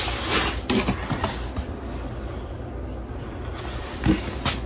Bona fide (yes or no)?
yes